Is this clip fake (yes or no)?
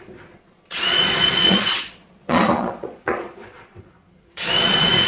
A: yes